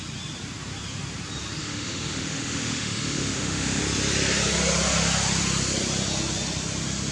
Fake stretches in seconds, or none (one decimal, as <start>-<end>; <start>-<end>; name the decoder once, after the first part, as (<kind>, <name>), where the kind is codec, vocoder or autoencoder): 1.6-3.8 (autoencoder, DAC-VAE)